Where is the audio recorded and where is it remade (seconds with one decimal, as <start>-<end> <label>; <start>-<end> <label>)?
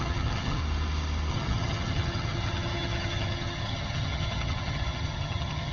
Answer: 0.0-0.6 remade; 0.6-1.3 recorded; 1.3-5.7 remade